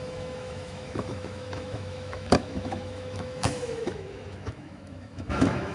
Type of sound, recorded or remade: remade